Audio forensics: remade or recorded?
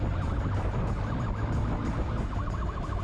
recorded